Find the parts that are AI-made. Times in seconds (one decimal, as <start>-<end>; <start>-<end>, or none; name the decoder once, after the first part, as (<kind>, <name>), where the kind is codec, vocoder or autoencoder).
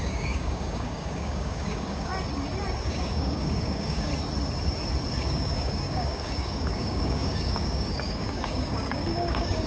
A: 0.0-2.1 (codec, DAC); 2.8-4.1; 5.1-9.7